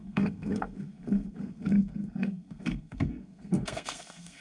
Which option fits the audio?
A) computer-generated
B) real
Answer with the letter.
A